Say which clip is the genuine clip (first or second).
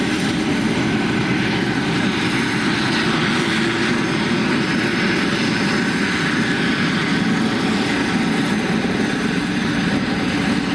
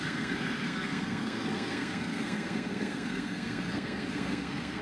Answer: first